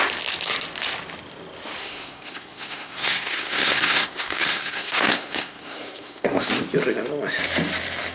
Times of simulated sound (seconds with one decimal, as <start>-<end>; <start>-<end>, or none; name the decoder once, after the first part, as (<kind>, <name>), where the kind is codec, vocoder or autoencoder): 1.8-6.5 (codec, SNAC)